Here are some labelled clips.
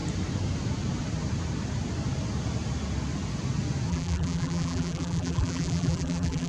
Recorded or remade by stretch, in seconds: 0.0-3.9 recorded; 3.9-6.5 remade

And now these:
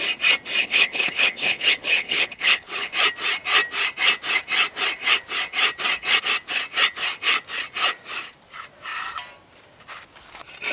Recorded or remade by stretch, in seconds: 0.0-0.6 recorded; 0.6-2.9 remade; 2.9-10.7 recorded

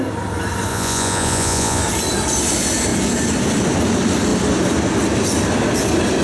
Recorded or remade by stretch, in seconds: 0.0-0.7 recorded; 0.7-1.8 remade; 1.8-6.2 recorded

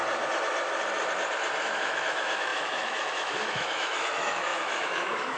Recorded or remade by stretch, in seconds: 0.0-1.6 recorded; 1.6-5.4 remade

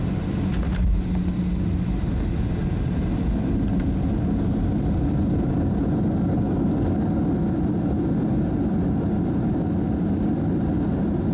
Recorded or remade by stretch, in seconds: 0.0-11.3 recorded